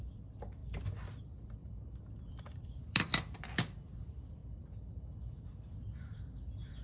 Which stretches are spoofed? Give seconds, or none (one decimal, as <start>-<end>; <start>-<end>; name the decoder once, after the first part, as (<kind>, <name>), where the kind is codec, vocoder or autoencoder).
0.0-0.6 (vocoder, BigVGAN v2); 1.2-1.6; 2.3-3.1; 3.8-4.4; 5.7-6.8